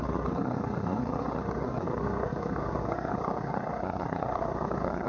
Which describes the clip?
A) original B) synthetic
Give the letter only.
B